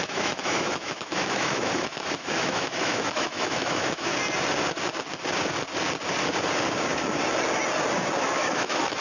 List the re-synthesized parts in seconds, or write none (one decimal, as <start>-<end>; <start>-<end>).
0.0-4.1; 8.2-9.0